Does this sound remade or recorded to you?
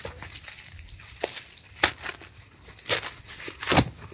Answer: recorded